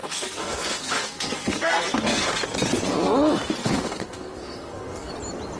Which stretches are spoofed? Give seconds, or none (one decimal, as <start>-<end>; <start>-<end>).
0.0-2.4; 3.6-5.1